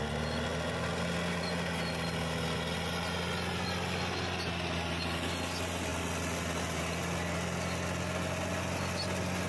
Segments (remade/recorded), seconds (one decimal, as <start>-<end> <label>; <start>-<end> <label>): 0.0-9.5 recorded